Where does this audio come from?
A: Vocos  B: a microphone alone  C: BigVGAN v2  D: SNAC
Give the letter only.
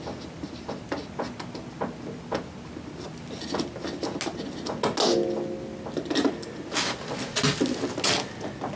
B